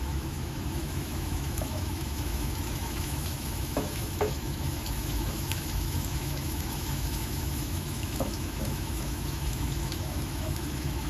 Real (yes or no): no